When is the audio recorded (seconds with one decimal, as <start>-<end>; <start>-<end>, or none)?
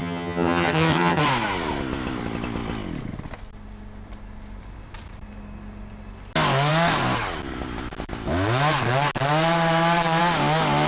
1.2-10.9